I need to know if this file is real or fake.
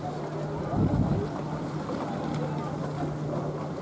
real